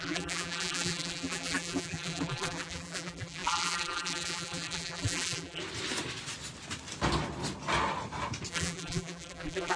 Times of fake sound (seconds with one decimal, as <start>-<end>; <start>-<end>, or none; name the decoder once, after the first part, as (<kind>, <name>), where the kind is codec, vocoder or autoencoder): 0.0-5.6 (vocoder, BigVGAN v2); 8.5-9.8